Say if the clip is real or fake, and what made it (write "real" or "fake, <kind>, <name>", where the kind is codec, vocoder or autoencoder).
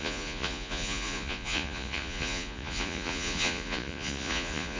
fake, vocoder, Vocos